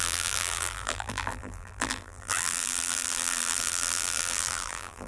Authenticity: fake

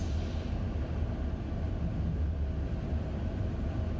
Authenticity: real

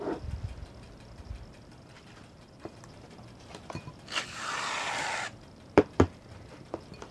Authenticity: fake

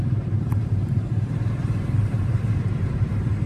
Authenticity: fake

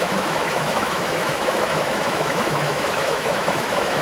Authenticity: fake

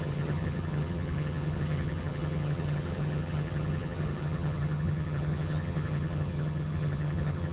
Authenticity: fake